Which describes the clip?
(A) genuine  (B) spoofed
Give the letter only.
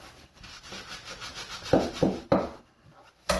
A